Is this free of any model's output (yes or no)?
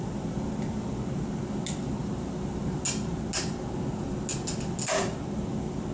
yes